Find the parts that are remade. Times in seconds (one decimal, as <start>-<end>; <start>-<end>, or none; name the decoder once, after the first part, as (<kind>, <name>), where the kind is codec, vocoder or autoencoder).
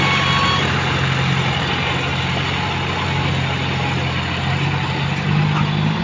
none